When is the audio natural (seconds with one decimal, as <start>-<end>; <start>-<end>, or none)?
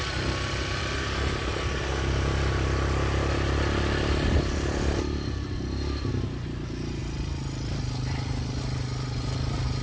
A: 0.0-9.8